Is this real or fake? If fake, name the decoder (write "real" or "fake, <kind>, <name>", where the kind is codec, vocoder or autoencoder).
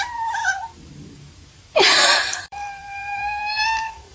fake, vocoder, BigVGAN v2